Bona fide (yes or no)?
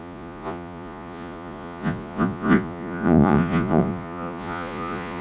no